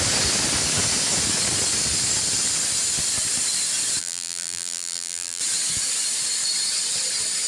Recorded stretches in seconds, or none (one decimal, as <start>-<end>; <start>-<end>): 0.0-4.0; 5.4-7.5